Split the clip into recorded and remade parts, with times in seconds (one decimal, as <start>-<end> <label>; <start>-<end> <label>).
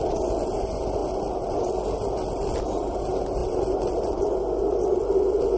0.0-1.0 remade; 1.0-1.5 recorded; 1.5-5.6 remade